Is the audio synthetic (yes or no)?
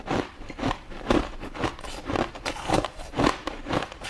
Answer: yes